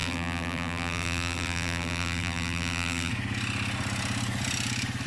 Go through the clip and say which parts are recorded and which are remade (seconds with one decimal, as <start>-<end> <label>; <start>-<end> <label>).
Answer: 0.0-3.1 remade; 3.1-5.1 recorded